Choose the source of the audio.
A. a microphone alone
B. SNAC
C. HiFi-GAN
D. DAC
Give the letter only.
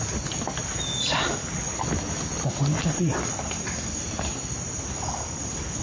A